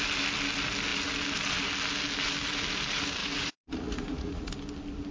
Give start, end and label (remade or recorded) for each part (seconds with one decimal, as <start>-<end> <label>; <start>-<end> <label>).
0.0-3.2 recorded; 3.2-4.5 remade; 4.5-5.1 recorded

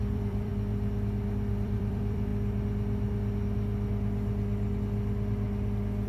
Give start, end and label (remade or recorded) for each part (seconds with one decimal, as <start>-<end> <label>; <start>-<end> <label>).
0.0-0.5 remade; 0.5-1.5 recorded; 1.5-2.3 remade; 2.3-6.1 recorded

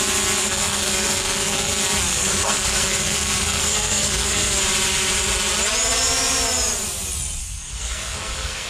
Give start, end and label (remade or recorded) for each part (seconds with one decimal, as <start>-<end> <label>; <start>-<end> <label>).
0.0-0.4 recorded; 0.4-1.7 remade; 1.7-2.1 recorded; 2.1-4.6 remade; 4.6-7.4 recorded; 7.4-8.7 remade